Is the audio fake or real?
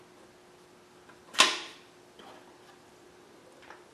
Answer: real